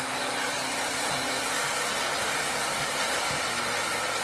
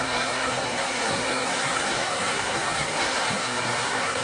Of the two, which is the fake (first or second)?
second